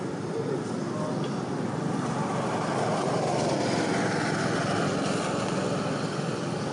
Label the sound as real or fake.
real